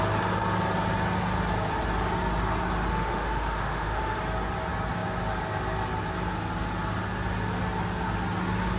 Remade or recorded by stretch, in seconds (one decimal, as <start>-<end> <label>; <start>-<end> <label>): 0.0-2.9 recorded; 2.9-4.2 remade; 4.2-8.8 recorded